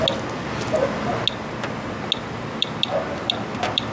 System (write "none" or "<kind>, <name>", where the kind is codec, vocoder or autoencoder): none